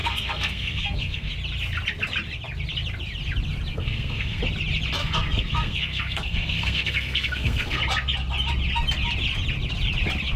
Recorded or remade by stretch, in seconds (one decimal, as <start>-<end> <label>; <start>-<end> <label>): 0.0-1.3 remade; 1.3-3.7 recorded; 3.7-4.4 remade; 4.4-5.0 recorded; 5.0-7.8 remade; 7.8-10.4 recorded